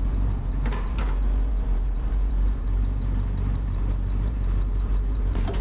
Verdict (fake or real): fake